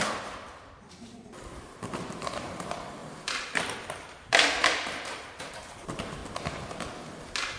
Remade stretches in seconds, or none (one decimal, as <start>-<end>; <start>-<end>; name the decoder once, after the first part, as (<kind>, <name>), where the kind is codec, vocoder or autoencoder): 0.0-6.2 (vocoder, BigVGAN v2)